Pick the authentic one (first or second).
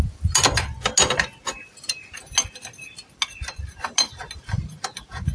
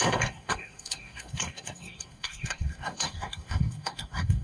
first